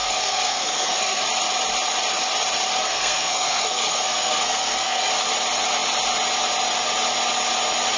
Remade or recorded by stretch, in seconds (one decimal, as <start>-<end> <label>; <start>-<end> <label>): 0.0-1.2 remade; 1.2-2.8 recorded; 2.8-5.1 remade; 5.1-8.0 recorded